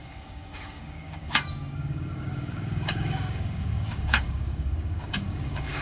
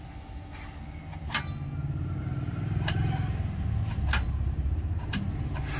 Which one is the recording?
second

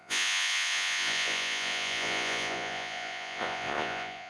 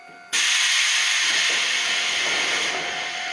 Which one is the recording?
second